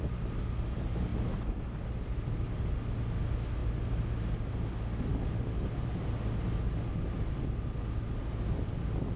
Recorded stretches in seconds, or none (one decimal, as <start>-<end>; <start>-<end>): 0.0-9.2